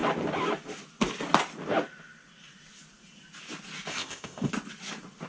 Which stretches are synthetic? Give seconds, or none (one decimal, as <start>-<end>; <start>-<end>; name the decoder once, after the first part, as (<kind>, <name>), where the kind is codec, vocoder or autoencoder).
3.9-4.5 (codec, ZipCodec)